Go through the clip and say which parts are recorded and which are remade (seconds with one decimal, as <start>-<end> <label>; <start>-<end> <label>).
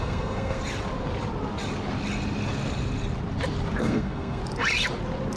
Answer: 0.0-0.6 remade; 0.6-3.8 recorded; 3.8-4.4 remade; 4.4-5.4 recorded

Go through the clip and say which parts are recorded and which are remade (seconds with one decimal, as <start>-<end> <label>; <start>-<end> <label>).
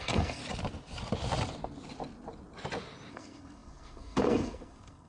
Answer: 0.0-0.4 remade; 0.4-3.1 recorded; 3.1-5.1 remade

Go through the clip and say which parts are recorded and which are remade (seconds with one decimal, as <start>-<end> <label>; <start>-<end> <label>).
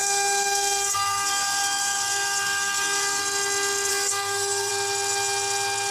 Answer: 0.0-3.2 remade; 3.2-3.9 recorded; 3.9-4.7 remade; 4.7-5.9 recorded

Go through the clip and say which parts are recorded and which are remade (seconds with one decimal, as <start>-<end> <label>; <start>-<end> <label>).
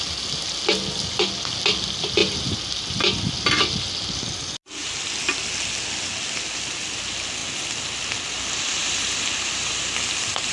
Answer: 0.0-10.5 recorded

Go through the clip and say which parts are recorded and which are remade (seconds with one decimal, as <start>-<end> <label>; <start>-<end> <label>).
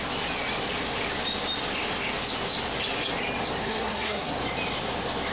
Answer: 0.0-3.6 recorded; 3.6-4.3 remade; 4.3-5.3 recorded